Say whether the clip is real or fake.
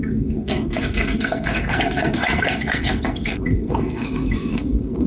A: fake